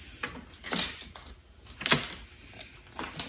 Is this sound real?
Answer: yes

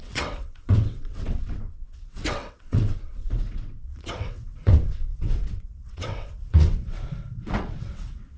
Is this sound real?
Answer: no